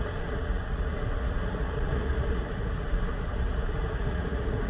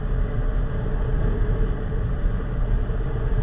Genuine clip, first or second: second